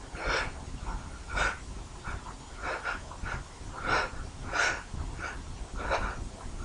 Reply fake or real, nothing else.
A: real